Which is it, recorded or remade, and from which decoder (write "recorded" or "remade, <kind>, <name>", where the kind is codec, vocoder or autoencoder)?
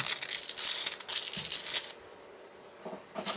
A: recorded